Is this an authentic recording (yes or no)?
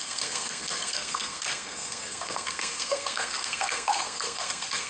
no